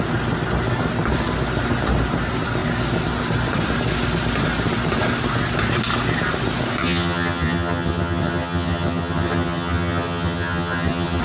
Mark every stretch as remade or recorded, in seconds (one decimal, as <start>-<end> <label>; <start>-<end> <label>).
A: 0.0-6.8 recorded; 6.8-11.2 remade